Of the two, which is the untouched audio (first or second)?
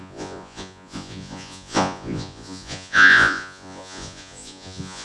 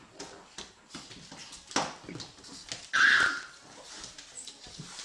second